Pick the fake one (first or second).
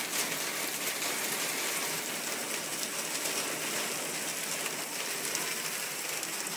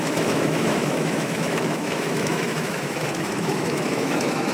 second